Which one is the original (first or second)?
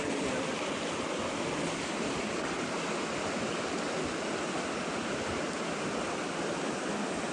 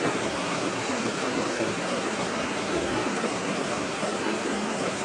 first